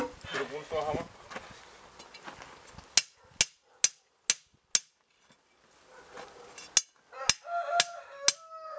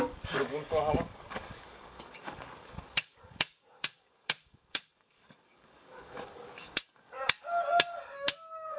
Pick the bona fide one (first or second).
first